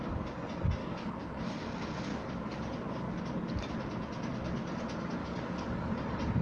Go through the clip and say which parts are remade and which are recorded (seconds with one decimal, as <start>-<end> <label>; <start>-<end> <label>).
0.0-0.8 recorded; 0.8-1.4 remade; 1.4-2.1 recorded; 2.1-3.2 remade; 3.2-5.2 recorded; 5.2-5.9 remade; 5.9-6.4 recorded